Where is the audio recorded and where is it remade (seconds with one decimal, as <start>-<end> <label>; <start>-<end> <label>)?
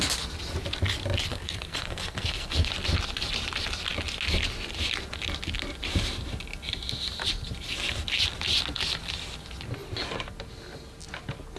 0.0-1.3 recorded; 1.3-2.7 remade; 2.7-11.6 recorded